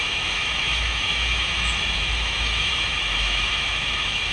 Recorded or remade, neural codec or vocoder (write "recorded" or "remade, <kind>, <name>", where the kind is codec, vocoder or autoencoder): remade, autoencoder, DAC-VAE